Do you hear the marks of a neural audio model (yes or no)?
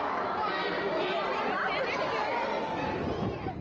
no